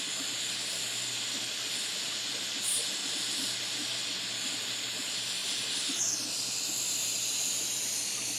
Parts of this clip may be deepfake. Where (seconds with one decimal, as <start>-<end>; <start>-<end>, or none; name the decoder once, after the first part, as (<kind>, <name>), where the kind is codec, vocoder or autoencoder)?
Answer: none